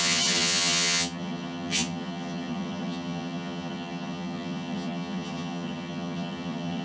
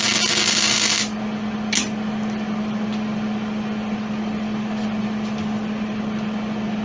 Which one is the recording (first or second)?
second